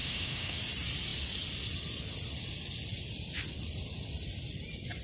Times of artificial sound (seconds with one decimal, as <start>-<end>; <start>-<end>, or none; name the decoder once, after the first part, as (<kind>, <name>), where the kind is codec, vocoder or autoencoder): 0.0-0.6 (autoencoder, DAC-VAE)